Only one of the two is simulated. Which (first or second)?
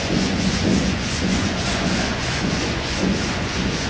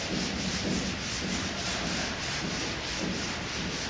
first